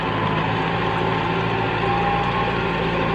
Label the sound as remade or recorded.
recorded